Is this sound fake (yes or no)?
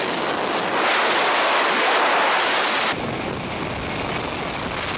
no